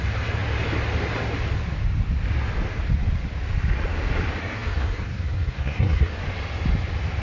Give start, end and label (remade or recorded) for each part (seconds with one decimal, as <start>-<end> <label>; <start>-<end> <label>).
0.0-4.4 recorded; 4.4-6.2 remade; 6.2-7.2 recorded